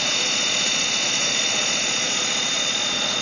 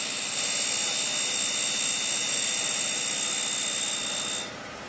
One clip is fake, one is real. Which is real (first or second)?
second